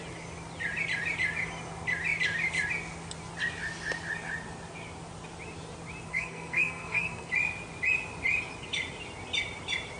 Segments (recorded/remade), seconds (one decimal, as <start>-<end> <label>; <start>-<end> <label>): 0.0-6.1 recorded; 6.1-7.3 remade; 7.3-10.0 recorded